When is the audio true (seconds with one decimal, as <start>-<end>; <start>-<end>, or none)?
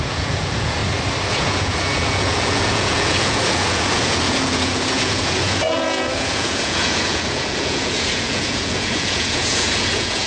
0.8-1.3